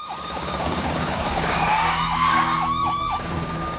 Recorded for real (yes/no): no